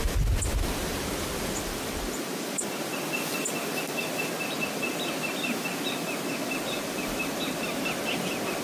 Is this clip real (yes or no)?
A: yes